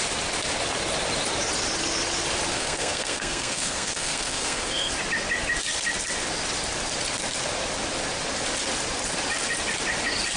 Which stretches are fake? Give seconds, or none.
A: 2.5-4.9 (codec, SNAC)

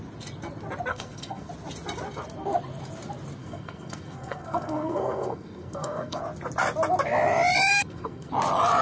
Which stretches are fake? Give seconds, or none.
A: 0.9-1.5 (codec, SNAC); 3.4-6.2; 7.7-8.3

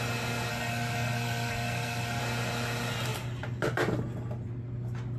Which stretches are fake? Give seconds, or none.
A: 0.5-2.2 (codec, SNAC)